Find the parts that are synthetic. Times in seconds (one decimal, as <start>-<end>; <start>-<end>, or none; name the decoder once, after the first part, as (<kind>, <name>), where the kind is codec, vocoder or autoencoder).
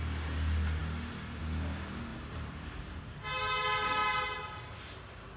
2.1-3.0 (vocoder, BigVGAN v2)